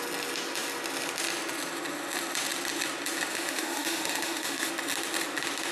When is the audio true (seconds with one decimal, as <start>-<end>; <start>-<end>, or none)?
0.0-3.3; 4.7-5.7